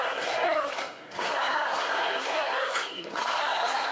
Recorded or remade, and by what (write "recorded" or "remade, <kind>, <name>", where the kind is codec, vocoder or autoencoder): remade, codec, SNAC